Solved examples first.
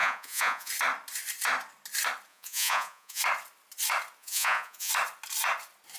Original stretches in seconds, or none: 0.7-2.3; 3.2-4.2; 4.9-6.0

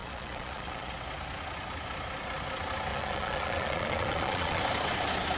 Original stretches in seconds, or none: 0.9-2.9; 4.6-5.4

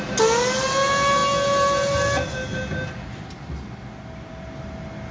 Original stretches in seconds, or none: 0.0-5.1